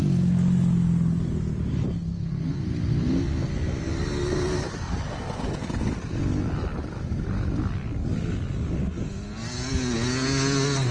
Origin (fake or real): real